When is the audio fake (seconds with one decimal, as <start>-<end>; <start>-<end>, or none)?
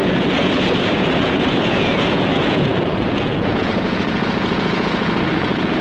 0.0-5.8